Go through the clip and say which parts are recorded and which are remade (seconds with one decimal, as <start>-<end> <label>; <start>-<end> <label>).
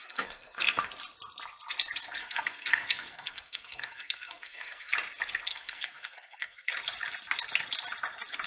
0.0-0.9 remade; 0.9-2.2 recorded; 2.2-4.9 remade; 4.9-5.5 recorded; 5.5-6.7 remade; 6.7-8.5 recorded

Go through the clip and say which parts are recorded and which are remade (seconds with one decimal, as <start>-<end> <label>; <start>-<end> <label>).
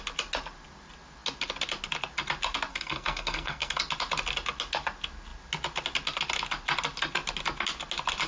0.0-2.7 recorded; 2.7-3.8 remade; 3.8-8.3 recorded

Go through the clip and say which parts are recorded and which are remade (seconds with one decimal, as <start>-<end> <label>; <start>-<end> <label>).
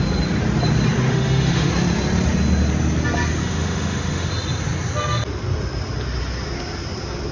0.0-1.1 recorded; 1.1-1.7 remade; 1.7-3.4 recorded; 3.4-4.3 remade; 4.3-7.3 recorded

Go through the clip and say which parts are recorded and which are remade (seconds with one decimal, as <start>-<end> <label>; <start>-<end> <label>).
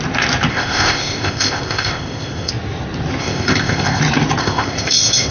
0.0-0.5 recorded; 0.5-2.5 remade; 2.5-3.2 recorded; 3.2-4.0 remade; 4.0-4.4 recorded; 4.4-5.3 remade